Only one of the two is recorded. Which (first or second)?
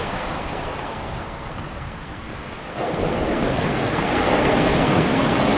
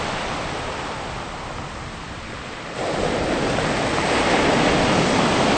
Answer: second